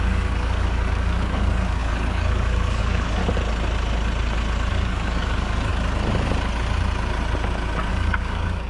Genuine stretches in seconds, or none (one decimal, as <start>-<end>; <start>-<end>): 3.2-4.7; 5.7-7.9